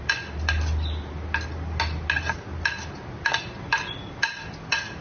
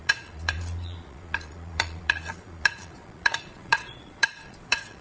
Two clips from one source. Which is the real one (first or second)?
first